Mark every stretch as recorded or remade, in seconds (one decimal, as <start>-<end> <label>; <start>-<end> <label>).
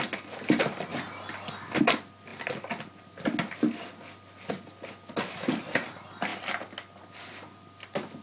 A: 0.0-8.2 recorded